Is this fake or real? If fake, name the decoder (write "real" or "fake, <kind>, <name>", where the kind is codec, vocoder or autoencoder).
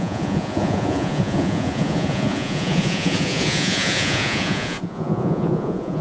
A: fake, vocoder, Vocos